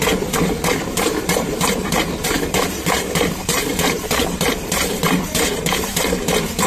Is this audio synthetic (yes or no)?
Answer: yes